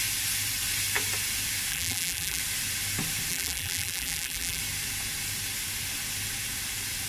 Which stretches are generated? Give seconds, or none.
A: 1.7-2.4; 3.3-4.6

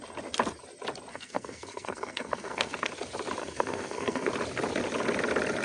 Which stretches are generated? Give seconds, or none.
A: 1.1-2.9; 3.4-4.3

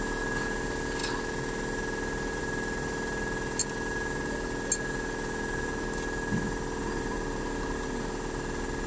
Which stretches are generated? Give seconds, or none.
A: none

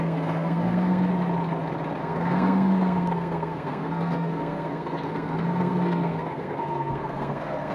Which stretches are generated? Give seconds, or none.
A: 0.0-1.1; 2.0-7.7

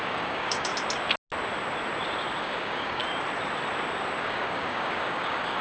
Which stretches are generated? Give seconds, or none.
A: 0.0-0.7; 2.4-3.0; 4.2-5.6

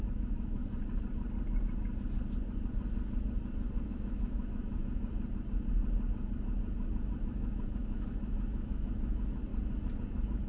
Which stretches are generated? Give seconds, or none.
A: 0.0-0.6; 3.9-4.8; 7.2-9.5; 10.0-10.5